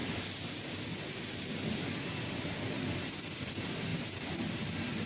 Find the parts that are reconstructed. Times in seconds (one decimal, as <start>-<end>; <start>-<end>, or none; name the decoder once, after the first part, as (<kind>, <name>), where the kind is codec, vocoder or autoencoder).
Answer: none